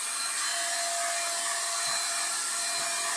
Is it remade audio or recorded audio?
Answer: recorded